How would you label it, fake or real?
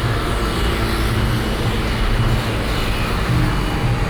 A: real